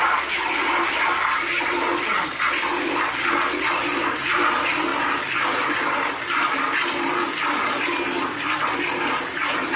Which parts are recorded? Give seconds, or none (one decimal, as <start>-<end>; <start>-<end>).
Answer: 4.9-9.0